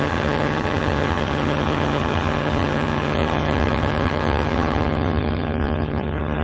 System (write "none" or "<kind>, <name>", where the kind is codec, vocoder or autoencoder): vocoder, HiFi-GAN